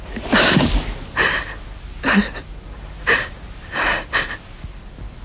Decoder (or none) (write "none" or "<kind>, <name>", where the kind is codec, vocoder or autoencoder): none